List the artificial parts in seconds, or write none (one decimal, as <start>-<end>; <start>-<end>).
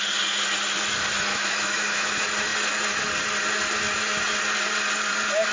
1.3-2.1